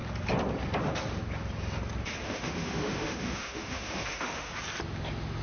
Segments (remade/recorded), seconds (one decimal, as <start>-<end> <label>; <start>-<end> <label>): 0.0-2.2 recorded; 2.2-4.5 remade; 4.5-5.4 recorded